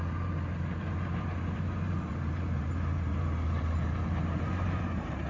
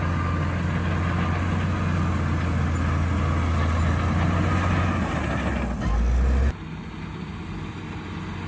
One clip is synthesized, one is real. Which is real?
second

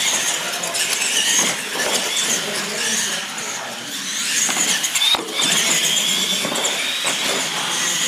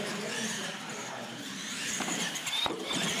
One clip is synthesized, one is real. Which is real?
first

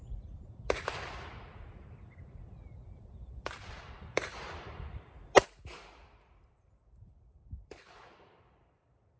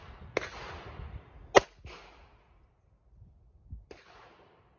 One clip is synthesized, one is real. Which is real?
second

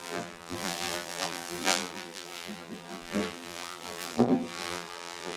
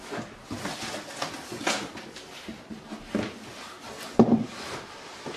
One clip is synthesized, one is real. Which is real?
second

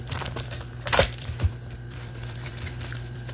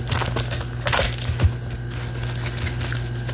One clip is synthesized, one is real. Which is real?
second